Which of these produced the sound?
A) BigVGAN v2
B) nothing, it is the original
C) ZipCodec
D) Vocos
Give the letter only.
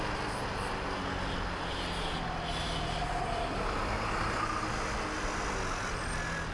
B